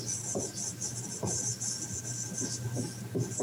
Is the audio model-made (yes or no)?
no